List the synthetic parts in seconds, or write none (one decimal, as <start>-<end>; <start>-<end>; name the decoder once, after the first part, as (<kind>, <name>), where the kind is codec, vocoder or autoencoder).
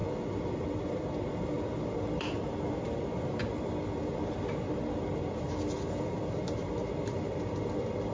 none